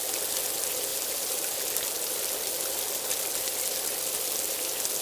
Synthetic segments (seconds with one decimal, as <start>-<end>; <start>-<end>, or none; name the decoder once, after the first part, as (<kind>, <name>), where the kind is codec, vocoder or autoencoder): none